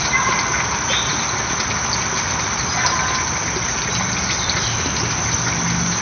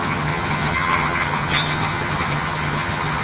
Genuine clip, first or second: first